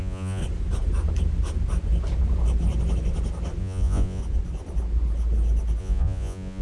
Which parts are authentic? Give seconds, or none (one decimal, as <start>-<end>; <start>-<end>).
0.4-3.6; 4.2-5.8